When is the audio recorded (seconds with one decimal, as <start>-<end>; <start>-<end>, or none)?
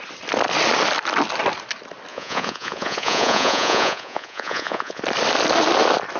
0.0-2.1; 5.0-6.2